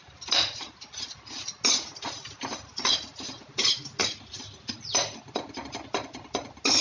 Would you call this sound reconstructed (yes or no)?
no